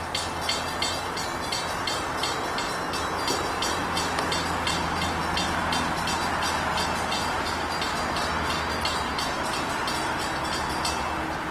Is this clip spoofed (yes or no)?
no